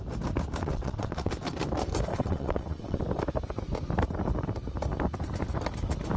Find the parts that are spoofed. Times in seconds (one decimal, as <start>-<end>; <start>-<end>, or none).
0.6-1.3; 2.1-3.0